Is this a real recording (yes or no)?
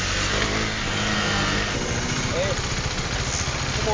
yes